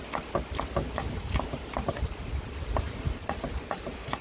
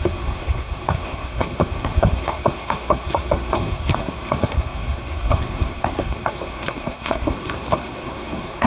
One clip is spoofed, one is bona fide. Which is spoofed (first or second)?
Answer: second